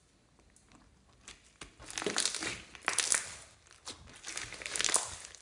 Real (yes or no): yes